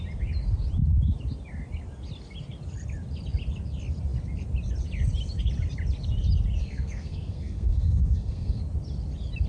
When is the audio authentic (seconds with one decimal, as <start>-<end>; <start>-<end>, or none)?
0.0-6.6; 8.6-9.5